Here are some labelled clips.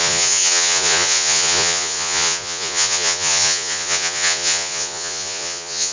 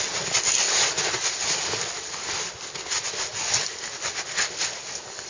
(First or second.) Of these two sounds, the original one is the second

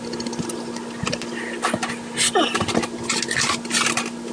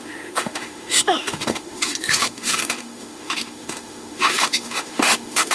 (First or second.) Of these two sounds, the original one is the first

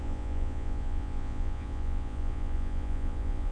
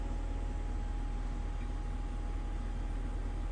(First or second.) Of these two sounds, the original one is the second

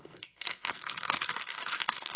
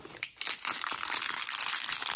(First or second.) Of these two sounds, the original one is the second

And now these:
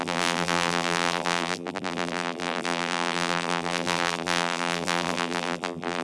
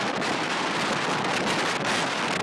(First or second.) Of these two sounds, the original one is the second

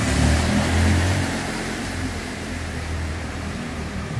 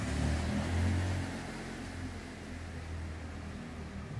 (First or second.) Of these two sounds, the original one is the second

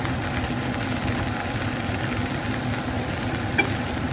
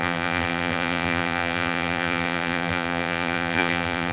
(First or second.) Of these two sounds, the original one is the first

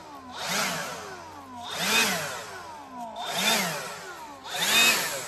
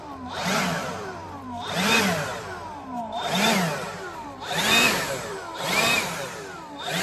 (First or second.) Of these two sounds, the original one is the first